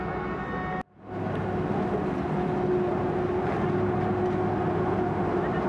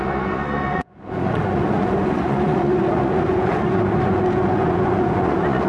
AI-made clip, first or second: second